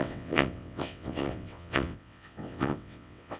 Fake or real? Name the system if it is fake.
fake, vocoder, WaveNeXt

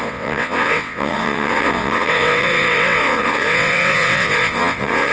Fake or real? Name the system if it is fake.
fake, vocoder, WaveNeXt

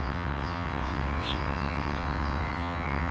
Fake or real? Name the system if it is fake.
fake, vocoder, WaveNeXt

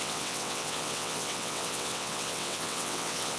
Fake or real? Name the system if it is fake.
fake, vocoder, WaveNeXt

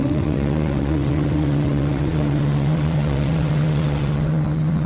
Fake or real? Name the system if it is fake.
fake, vocoder, WaveNeXt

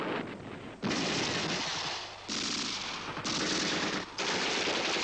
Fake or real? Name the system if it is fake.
real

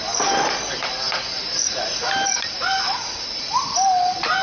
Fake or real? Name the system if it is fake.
real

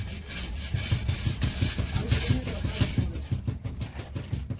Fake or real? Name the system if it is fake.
real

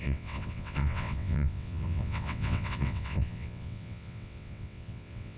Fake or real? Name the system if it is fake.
fake, vocoder, WaveNeXt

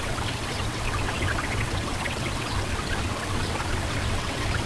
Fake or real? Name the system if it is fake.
fake, vocoder, WaveNeXt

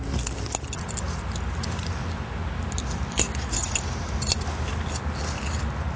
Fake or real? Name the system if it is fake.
real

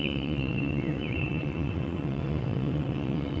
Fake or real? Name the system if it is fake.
fake, vocoder, WaveNeXt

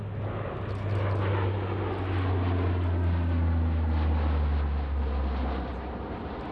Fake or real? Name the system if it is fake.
real